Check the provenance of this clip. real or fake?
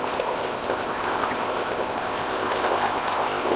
fake